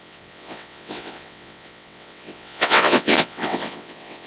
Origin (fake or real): fake